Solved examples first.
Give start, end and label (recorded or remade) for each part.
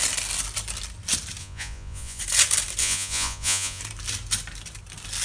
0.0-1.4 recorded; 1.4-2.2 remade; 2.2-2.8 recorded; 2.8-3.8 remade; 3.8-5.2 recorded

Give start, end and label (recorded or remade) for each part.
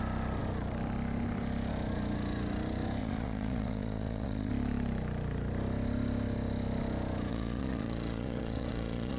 0.0-3.0 recorded; 3.0-4.5 remade; 4.5-7.3 recorded; 7.3-9.2 remade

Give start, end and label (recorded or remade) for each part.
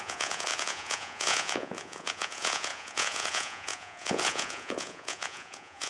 0.0-5.9 remade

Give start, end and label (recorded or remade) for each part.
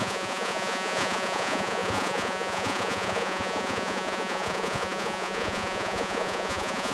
0.0-6.9 remade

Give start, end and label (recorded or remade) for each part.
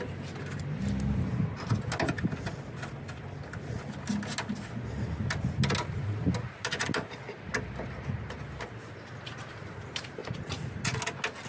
0.0-10.2 recorded; 10.2-11.0 remade; 11.0-11.5 recorded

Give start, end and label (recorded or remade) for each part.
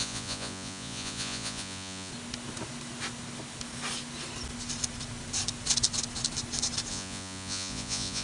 0.0-2.1 remade; 2.1-6.9 recorded; 6.9-8.2 remade